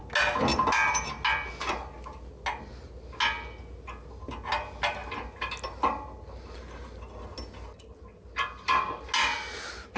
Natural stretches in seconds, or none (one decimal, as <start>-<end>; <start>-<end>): 0.0-10.0